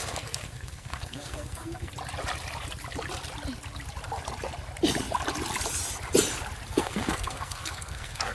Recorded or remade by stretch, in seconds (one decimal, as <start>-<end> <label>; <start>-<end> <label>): 0.0-1.9 remade; 1.9-6.7 recorded; 6.7-8.3 remade